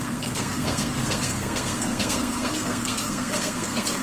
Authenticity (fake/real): fake